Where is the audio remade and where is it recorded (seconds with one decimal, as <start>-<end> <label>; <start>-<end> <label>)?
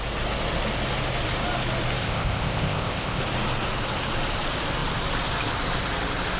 0.0-2.0 recorded; 2.0-3.2 remade; 3.2-6.4 recorded